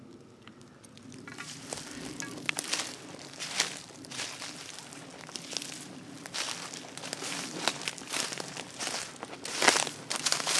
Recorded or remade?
recorded